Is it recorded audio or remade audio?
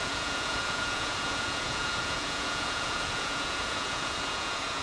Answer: remade